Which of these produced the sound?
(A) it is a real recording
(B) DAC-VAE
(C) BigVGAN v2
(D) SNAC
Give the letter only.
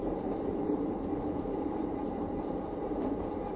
C